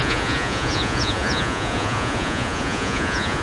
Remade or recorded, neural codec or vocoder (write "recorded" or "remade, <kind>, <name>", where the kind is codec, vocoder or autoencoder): remade, vocoder, Vocos